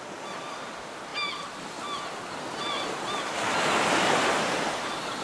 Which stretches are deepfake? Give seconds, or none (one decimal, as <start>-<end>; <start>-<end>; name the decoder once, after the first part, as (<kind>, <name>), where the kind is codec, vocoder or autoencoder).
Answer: none